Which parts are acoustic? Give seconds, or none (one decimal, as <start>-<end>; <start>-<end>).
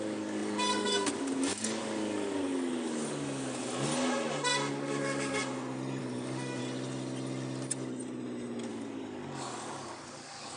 3.9-4.7; 5.4-6.0; 6.6-8.7